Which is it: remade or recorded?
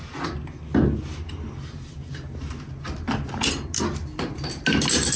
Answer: recorded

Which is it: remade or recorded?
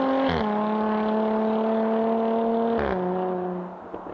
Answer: recorded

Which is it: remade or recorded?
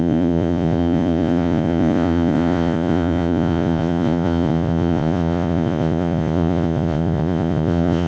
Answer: remade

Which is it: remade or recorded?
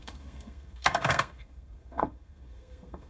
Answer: remade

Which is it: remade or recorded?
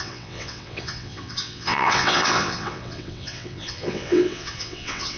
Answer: remade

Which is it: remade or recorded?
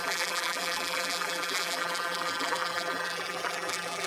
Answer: remade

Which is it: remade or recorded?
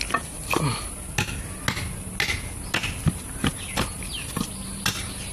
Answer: recorded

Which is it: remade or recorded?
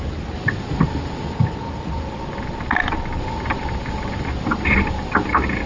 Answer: recorded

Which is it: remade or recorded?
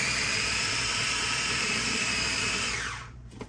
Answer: remade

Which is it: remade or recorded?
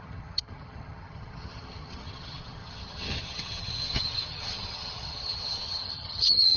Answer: remade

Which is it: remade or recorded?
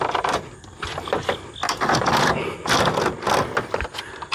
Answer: recorded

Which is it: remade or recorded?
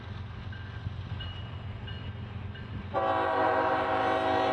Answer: recorded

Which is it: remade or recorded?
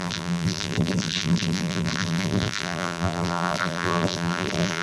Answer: remade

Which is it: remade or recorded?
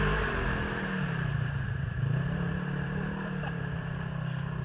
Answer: remade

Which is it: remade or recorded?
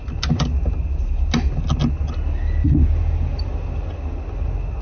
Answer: recorded